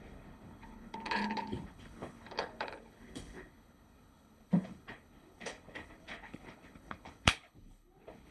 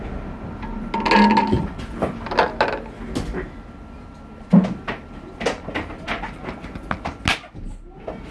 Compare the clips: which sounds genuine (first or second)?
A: second